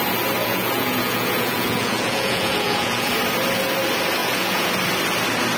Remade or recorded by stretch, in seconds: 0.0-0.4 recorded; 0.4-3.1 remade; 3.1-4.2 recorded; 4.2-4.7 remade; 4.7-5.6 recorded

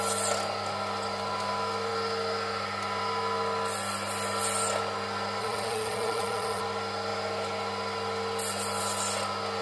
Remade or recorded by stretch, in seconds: 0.0-5.4 recorded; 5.4-6.6 remade; 6.6-9.6 recorded

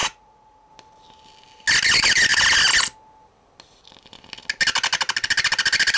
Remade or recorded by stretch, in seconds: 0.0-0.7 remade; 0.7-6.0 recorded

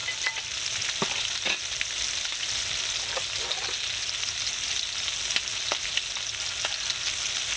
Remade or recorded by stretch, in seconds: 0.0-7.6 recorded

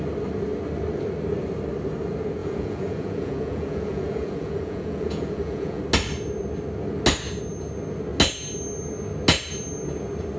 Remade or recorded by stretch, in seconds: 0.0-2.4 recorded; 2.4-5.8 remade; 5.8-10.4 recorded

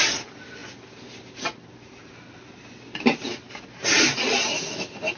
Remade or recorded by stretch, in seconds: 0.0-5.2 recorded

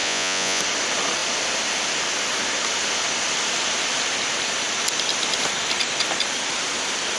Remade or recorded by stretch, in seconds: 0.0-0.6 remade; 0.6-7.2 recorded